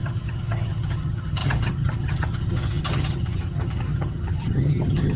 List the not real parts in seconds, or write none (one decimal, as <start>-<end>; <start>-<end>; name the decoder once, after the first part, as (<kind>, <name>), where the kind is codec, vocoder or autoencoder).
0.0-5.2 (vocoder, HiFi-GAN)